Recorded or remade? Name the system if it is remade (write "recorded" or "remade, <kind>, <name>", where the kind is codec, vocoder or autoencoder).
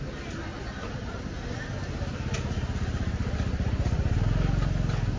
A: recorded